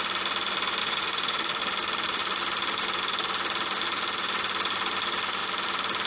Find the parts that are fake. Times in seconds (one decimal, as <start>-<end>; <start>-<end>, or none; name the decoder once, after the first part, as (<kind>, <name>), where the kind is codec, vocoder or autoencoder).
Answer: 0.8-1.6 (vocoder, Vocos)